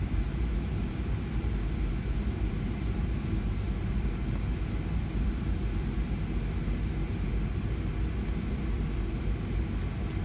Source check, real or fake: real